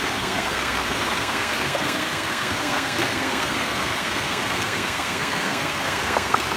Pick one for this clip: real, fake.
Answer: fake